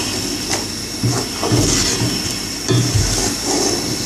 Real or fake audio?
real